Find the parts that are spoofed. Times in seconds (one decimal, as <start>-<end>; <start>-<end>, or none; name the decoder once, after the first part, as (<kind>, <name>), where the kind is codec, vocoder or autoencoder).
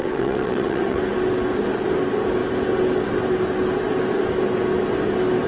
0.0-1.0 (vocoder, WaveNeXt)